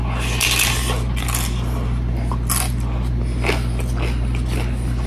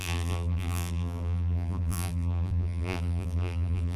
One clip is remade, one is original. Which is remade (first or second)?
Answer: second